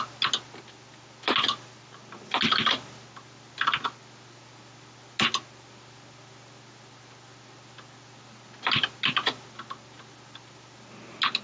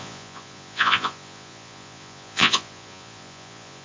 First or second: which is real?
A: first